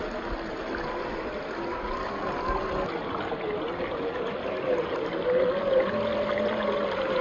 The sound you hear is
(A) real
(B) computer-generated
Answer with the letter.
A